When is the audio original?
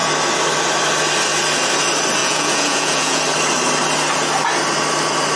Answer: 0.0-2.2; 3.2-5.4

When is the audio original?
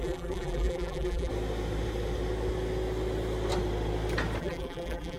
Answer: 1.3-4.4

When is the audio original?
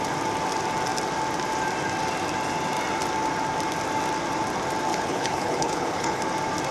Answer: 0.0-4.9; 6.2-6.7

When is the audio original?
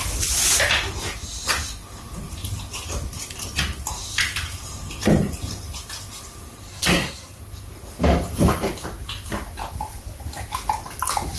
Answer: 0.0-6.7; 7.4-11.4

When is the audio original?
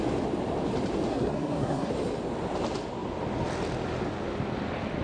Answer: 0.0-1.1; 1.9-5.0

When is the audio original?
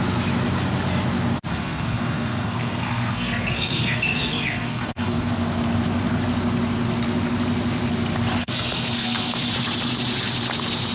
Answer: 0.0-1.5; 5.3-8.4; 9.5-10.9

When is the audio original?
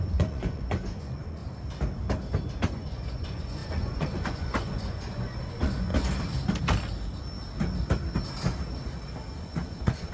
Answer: 1.4-2.7; 5.9-9.4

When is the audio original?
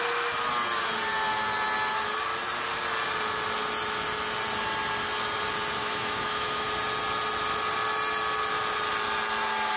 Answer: 0.0-5.8; 6.7-9.8